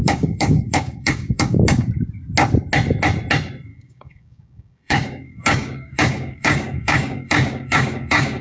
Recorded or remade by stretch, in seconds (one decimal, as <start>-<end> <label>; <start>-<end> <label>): 0.0-1.9 remade; 1.9-3.7 recorded; 3.7-8.4 remade